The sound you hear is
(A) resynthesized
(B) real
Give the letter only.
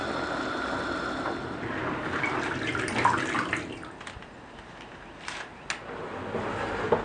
B